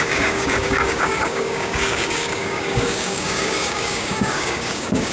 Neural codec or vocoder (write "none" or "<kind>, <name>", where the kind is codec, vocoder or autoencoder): codec, DAC